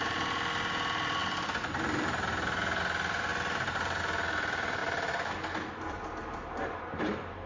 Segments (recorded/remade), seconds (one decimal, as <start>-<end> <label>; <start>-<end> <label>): 0.0-1.2 recorded; 1.2-2.8 remade; 2.8-4.8 recorded; 4.8-5.3 remade; 5.3-7.5 recorded